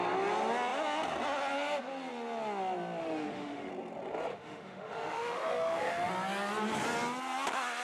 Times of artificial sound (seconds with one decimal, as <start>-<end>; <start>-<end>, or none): 3.0-3.7; 4.3-6.1